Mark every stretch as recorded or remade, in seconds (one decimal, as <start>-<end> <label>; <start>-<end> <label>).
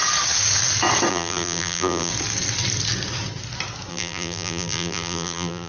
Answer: 0.0-1.1 recorded; 1.1-2.1 remade; 2.1-3.9 recorded; 3.9-5.7 remade